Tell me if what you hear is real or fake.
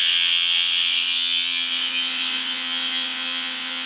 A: fake